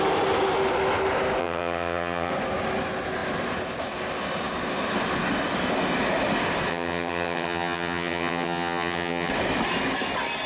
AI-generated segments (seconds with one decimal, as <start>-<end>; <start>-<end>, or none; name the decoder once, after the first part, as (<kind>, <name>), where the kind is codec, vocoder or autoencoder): 1.4-2.3 (vocoder, HiFi-GAN); 6.7-9.3